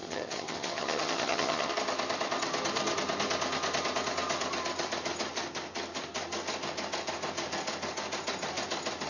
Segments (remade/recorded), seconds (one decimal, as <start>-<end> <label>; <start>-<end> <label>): 0.0-1.7 remade; 1.7-9.1 recorded